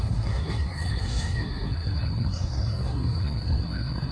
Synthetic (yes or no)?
yes